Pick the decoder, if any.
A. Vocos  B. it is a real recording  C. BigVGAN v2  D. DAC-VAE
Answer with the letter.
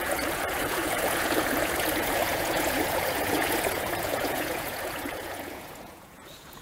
A